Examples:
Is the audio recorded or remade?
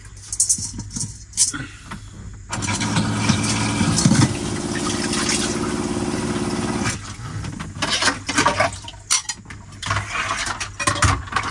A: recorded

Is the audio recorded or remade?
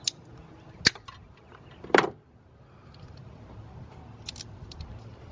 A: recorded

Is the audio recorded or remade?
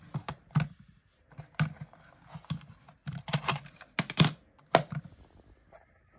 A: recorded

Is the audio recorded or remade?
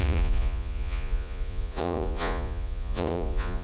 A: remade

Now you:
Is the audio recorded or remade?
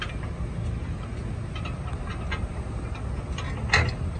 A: recorded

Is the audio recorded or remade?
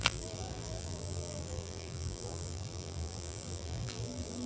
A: remade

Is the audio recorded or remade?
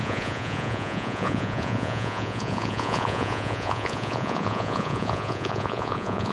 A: remade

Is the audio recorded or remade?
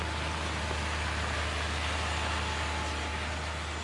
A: recorded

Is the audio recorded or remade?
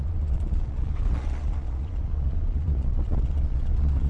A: remade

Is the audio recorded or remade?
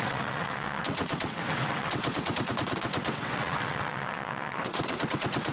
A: remade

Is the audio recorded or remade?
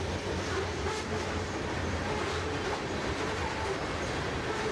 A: recorded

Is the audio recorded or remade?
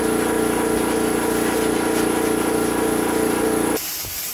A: recorded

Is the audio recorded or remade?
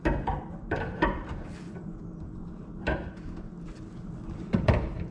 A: remade